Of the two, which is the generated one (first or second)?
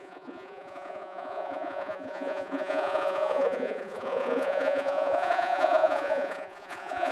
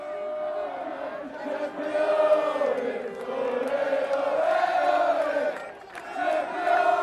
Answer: first